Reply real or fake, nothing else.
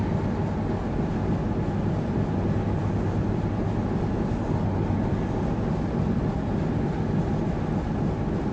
real